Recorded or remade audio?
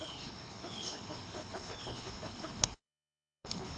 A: remade